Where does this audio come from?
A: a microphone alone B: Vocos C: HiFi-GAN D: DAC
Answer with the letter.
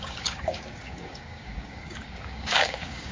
D